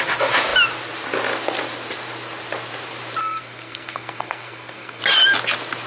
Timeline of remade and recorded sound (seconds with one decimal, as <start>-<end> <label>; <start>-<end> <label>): 0.0-3.2 recorded; 3.2-5.0 remade; 5.0-5.9 recorded